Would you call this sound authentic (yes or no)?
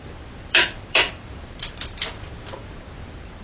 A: no